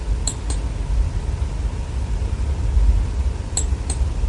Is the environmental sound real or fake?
real